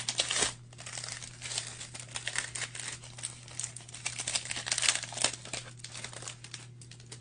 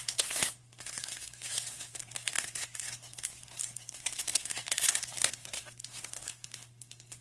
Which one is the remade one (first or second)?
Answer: second